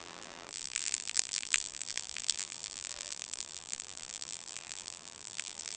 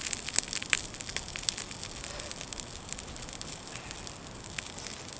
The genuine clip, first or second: second